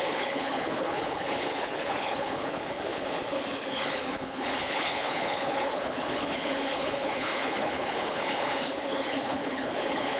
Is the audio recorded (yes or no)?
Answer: no